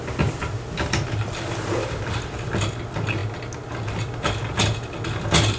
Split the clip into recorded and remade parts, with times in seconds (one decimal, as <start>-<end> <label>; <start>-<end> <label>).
0.0-5.6 recorded